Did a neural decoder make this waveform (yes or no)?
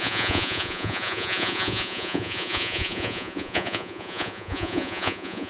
yes